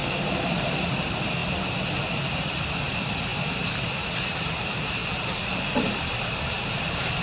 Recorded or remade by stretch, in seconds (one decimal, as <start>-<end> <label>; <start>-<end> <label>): 0.0-1.4 remade; 1.4-2.9 recorded; 2.9-3.3 remade; 3.3-4.1 recorded; 4.1-7.2 remade